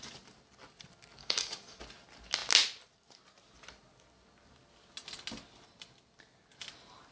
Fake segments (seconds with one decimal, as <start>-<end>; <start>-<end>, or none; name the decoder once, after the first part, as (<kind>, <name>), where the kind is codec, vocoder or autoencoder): 1.2-1.8 (codec, DAC)